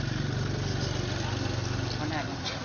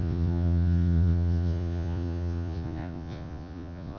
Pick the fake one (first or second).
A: second